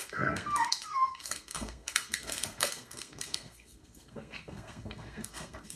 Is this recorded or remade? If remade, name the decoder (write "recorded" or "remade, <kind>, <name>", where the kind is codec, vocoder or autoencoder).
remade, codec, SNAC